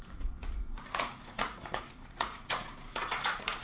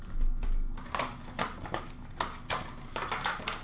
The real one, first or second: second